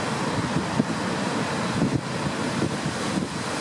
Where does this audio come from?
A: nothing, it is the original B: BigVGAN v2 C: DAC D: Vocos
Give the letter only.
B